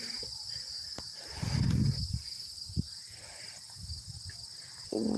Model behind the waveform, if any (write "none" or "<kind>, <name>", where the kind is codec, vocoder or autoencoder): none